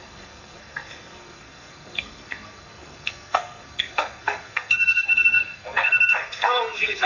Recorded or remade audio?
remade